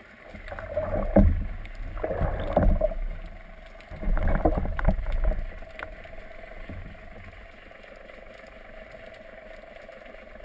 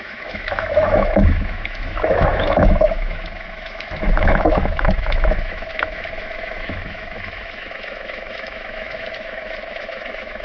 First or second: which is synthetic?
second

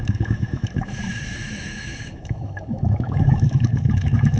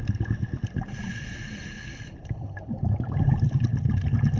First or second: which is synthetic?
first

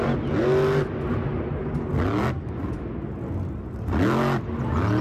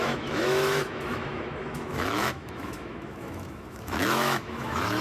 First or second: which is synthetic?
second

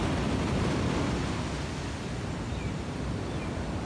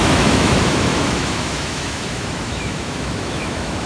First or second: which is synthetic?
second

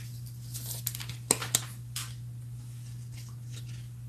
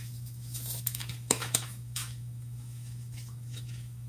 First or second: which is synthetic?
second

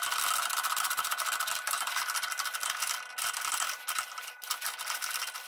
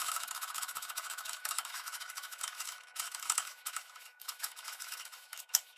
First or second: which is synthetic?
second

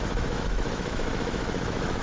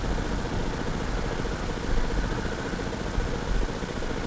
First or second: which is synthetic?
first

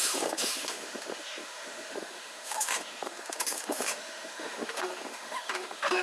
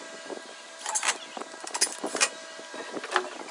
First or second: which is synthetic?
first